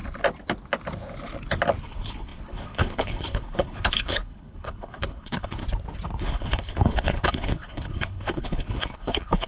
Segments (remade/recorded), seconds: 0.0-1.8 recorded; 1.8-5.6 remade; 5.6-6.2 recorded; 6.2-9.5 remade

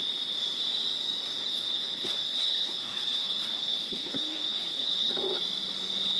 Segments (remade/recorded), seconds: 0.0-1.4 recorded; 1.4-5.1 remade; 5.1-6.2 recorded

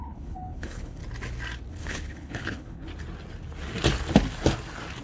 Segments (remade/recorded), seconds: 0.0-1.0 remade; 1.0-1.7 recorded; 1.7-2.9 remade; 2.9-5.0 recorded